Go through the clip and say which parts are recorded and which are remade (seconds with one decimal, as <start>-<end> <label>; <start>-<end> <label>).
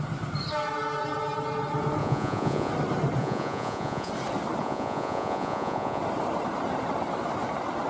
0.0-2.0 recorded; 2.0-2.7 remade; 2.7-3.2 recorded; 3.2-4.1 remade; 4.1-4.6 recorded; 4.6-6.0 remade; 6.0-7.9 recorded